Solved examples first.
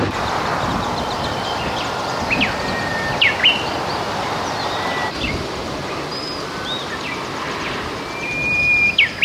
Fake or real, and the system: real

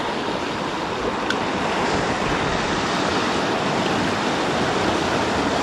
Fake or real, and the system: real